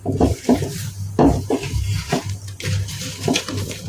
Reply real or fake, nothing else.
fake